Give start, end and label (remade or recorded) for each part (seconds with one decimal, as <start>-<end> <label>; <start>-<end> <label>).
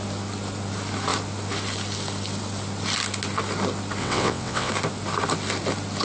0.0-4.0 recorded; 4.0-4.7 remade; 4.7-6.0 recorded